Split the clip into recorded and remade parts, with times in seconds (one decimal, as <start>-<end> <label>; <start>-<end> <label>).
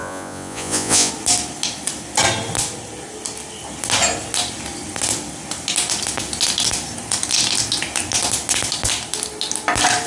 0.0-1.1 remade; 1.1-10.1 recorded